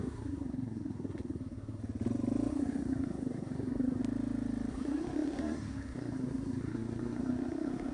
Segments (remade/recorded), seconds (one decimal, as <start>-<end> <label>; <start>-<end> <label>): 0.0-1.8 remade; 1.8-2.5 recorded; 2.5-4.0 remade; 4.0-4.7 recorded; 4.7-7.9 remade

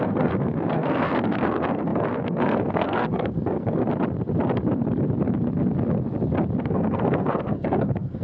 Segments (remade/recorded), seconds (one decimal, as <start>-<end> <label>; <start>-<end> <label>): 0.0-3.8 remade; 3.8-6.6 recorded; 6.6-8.2 remade